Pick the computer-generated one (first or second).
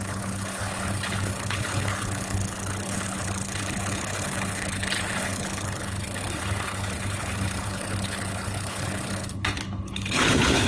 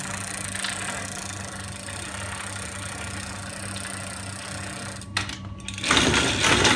first